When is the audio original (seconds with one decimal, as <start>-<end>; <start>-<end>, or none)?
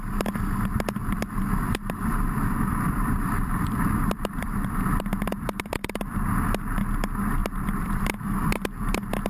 0.0-1.0; 6.3-7.4; 8.0-9.3